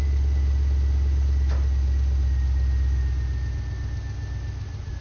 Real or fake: real